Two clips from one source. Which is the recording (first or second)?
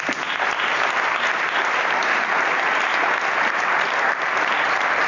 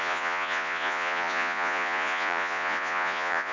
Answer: first